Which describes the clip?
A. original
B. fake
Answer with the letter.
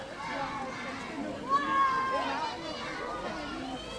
A